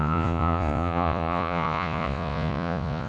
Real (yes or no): no